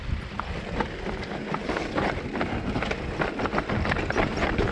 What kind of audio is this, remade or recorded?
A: recorded